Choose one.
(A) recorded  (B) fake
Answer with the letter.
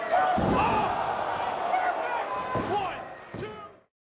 A